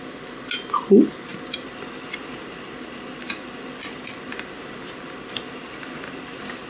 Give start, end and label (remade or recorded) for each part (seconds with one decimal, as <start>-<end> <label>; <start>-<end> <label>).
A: 0.0-6.7 recorded